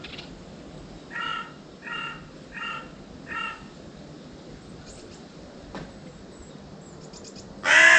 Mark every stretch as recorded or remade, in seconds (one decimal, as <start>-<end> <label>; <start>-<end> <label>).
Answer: 0.0-8.0 recorded